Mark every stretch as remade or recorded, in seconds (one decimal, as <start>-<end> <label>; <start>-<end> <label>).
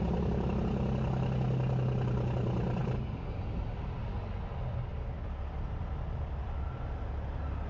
0.0-7.7 recorded